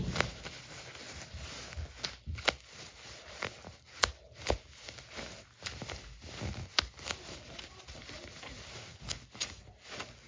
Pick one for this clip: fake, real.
real